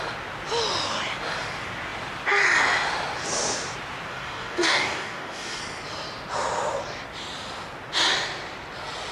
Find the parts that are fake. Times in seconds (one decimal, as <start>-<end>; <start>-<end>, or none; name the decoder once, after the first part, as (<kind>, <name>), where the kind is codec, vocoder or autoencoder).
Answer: 4.1-5.6 (codec, DAC)